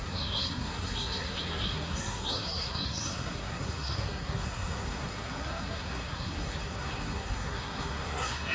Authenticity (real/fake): fake